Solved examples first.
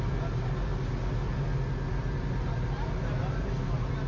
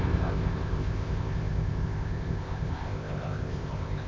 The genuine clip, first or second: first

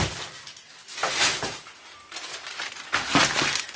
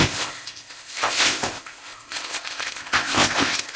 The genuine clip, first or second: first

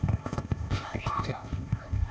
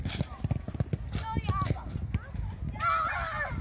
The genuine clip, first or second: second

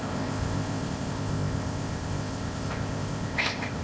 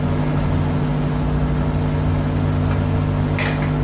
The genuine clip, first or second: second